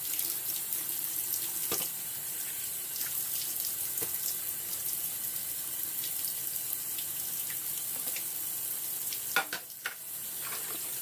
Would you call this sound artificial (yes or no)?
no